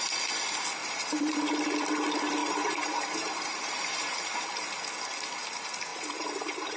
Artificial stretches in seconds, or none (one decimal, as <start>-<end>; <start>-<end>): 0.8-1.4; 2.4-4.4; 5.9-6.8